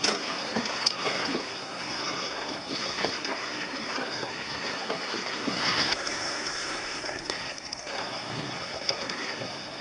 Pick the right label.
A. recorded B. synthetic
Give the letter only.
B